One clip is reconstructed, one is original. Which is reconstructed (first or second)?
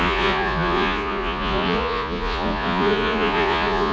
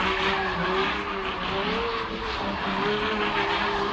first